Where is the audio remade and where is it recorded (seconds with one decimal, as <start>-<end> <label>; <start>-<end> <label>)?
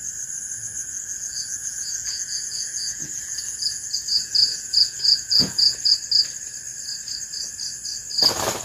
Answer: 0.0-0.8 recorded; 0.8-5.9 remade; 5.9-8.6 recorded